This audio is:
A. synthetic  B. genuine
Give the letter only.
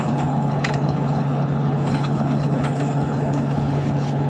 A